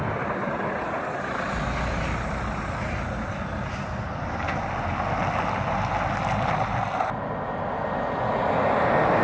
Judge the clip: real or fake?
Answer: real